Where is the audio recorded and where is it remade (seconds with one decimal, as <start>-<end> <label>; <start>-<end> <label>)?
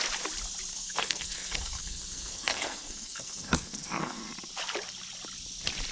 0.0-0.7 recorded; 0.7-4.2 remade; 4.2-5.9 recorded